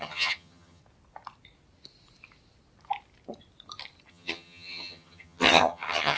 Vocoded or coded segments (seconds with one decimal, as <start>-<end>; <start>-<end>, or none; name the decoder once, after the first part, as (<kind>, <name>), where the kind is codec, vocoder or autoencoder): 0.0-0.8 (vocoder, HiFi-GAN); 4.1-6.2